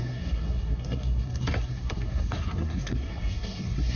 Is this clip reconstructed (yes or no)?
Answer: yes